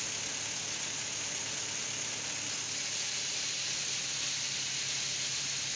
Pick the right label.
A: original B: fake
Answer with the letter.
A